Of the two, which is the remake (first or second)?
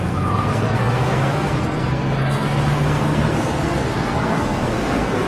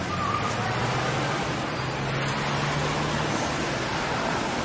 first